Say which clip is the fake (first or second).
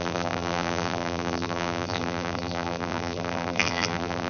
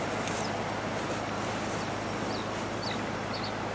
first